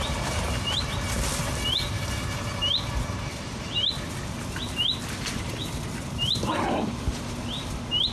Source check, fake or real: real